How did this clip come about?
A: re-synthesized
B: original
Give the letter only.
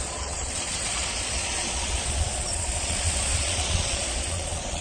A